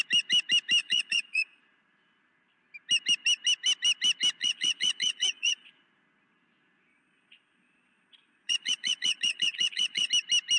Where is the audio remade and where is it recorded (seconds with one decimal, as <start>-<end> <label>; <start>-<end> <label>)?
0.0-0.8 recorded; 0.8-1.6 remade; 1.6-4.4 recorded; 4.4-5.7 remade; 5.7-6.9 recorded; 6.9-10.1 remade; 10.1-10.6 recorded